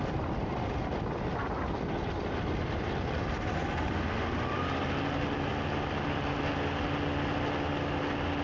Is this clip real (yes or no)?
yes